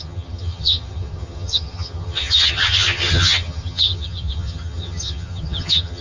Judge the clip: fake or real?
fake